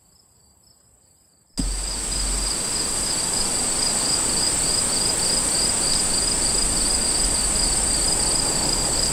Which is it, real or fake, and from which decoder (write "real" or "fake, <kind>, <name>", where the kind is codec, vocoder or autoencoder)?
real